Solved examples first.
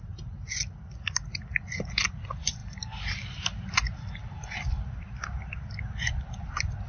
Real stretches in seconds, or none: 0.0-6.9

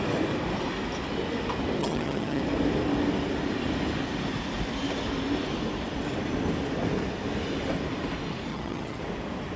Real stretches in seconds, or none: 0.0-1.8; 2.4-8.5; 9.0-9.6

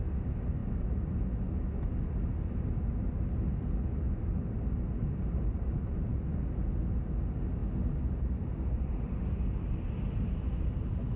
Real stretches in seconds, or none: 0.0-0.6; 1.2-5.0; 6.6-11.2

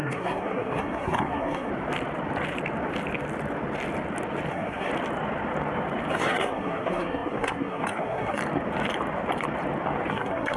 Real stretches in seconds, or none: 1.7-4.5; 4.9-6.1; 8.4-10.1